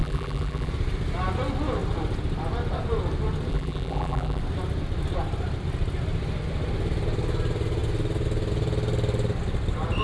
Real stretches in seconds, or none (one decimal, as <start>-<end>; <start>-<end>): 0.7-3.5; 4.4-10.0